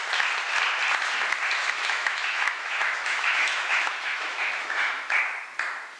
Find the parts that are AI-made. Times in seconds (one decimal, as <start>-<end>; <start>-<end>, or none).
1.6-5.2